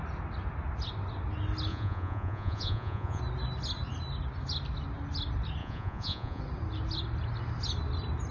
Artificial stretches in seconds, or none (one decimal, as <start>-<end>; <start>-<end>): 1.7-3.2; 5.6-6.4